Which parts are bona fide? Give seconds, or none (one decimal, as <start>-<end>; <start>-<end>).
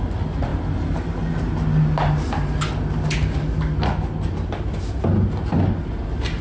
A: 0.0-6.4